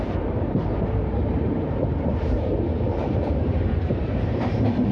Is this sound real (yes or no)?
no